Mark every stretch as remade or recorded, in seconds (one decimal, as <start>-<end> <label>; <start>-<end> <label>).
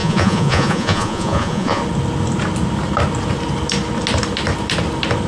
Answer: 0.0-1.8 remade; 1.8-5.3 recorded